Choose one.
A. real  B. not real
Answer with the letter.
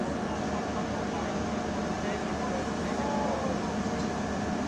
A